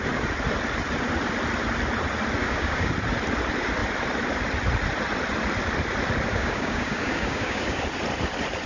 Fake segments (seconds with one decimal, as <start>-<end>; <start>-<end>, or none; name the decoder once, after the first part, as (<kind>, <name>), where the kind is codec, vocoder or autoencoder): 2.4-2.9 (codec, DAC); 6.3-7.8